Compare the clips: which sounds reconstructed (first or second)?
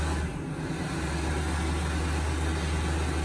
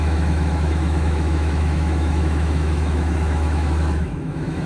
second